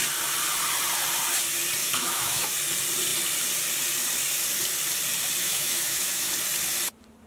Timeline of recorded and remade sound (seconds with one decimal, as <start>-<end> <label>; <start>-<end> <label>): 0.0-1.8 recorded; 1.8-2.5 remade; 2.5-5.4 recorded; 5.4-6.3 remade; 6.3-7.3 recorded